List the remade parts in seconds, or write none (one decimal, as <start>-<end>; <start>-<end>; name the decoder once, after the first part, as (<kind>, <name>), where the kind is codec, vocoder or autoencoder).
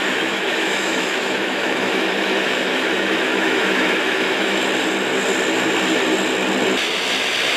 0.0-4.6 (autoencoder, DAC-VAE)